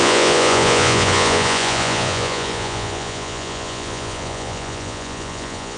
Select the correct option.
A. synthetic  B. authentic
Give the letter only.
A